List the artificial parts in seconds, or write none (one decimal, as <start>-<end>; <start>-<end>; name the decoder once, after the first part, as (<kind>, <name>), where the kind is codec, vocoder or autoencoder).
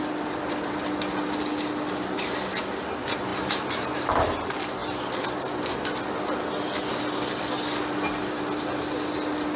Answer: none